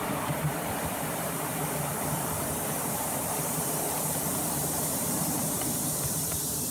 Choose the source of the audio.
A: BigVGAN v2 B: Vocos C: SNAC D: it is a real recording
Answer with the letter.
A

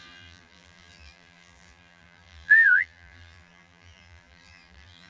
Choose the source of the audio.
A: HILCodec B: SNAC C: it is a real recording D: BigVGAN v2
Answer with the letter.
D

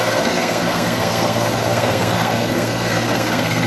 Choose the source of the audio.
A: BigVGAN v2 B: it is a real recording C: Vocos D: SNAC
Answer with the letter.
D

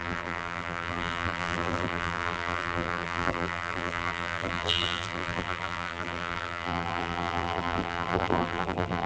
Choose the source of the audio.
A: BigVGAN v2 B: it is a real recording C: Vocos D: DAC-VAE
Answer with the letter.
A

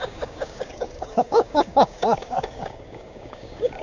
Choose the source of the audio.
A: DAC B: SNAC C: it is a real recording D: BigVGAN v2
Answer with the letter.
A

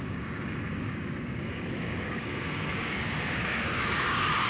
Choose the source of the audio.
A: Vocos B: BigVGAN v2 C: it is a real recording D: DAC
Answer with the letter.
D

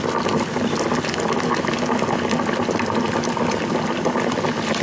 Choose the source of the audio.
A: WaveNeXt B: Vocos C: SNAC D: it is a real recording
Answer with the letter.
D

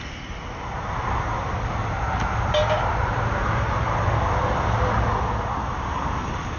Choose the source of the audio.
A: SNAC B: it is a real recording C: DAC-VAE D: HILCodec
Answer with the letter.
B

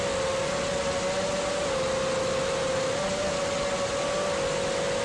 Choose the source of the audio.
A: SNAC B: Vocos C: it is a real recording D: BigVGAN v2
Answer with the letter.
C